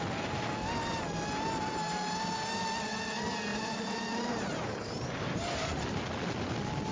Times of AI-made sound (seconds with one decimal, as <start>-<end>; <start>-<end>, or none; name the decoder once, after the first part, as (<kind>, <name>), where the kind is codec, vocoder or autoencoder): 3.5-5.8 (vocoder, BigVGAN v2)